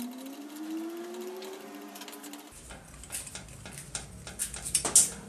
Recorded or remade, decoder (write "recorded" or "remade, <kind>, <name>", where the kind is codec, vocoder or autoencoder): recorded